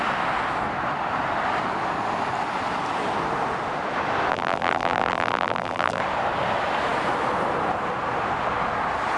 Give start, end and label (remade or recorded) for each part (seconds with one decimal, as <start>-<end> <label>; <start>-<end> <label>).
0.0-4.3 recorded; 4.3-6.0 remade; 6.0-9.2 recorded